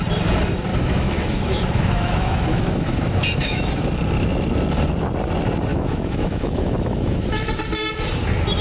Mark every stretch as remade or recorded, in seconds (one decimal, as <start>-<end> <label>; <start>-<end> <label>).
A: 0.0-0.7 recorded; 0.7-3.7 remade; 3.7-5.7 recorded; 5.7-7.5 remade; 7.5-8.6 recorded